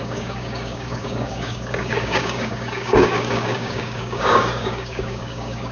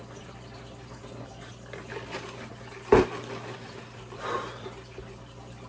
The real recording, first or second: second